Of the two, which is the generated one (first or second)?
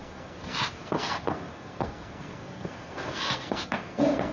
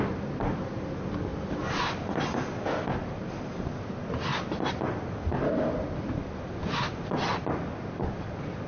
first